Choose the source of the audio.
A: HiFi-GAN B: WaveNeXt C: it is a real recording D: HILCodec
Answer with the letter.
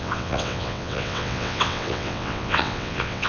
B